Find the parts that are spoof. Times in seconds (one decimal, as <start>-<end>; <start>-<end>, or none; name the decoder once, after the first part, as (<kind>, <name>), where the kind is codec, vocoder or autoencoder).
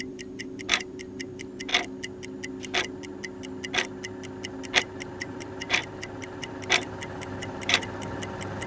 0.0-1.7 (vocoder, BigVGAN v2); 4.8-8.7